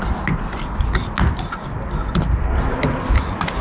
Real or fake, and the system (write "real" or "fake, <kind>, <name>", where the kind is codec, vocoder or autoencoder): real